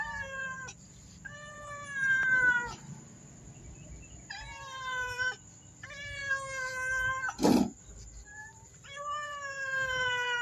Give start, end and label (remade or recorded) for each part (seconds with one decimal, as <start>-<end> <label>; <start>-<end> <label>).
0.0-6.2 remade; 6.2-7.5 recorded; 7.5-10.4 remade